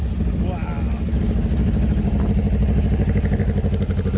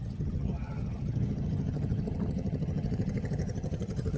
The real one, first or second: first